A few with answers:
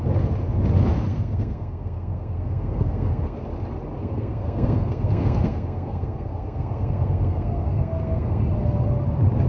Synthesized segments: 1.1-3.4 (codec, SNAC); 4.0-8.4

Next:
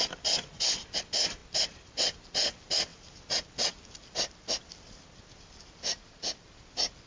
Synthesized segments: none